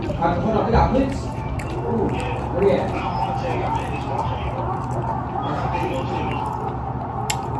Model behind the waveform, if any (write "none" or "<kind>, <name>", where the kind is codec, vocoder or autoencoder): none